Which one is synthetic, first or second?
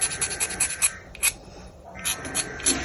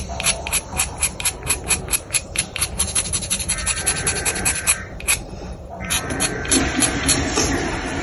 second